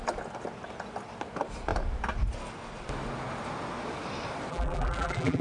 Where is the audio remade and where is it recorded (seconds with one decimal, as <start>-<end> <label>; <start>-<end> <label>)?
0.0-4.5 recorded; 4.5-5.4 remade